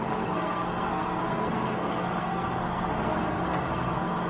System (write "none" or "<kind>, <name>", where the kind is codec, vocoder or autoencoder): codec, SNAC